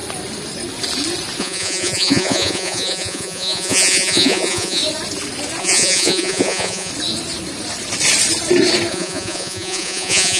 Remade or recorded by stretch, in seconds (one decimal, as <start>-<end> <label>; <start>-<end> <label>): 0.0-1.4 recorded; 1.4-4.8 remade; 4.8-5.6 recorded; 5.6-6.9 remade; 6.9-8.9 recorded; 8.9-10.4 remade